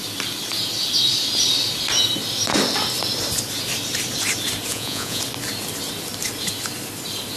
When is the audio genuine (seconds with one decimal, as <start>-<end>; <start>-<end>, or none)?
0.0-4.7; 5.2-7.4